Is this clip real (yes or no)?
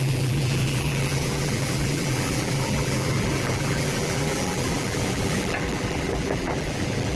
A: no